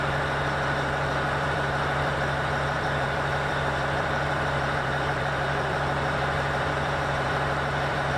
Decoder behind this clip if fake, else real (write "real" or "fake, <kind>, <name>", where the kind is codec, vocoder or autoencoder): fake, vocoder, BigVGAN v2